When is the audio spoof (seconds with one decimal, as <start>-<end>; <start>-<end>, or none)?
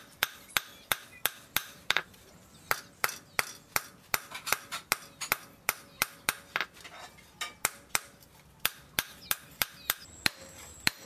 1.6-2.7